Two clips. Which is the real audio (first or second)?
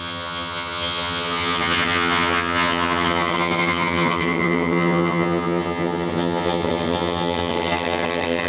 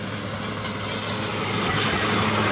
second